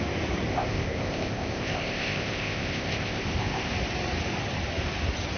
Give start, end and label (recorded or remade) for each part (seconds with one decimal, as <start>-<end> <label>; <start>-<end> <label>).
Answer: 0.0-0.5 recorded; 0.5-3.7 remade; 3.7-5.4 recorded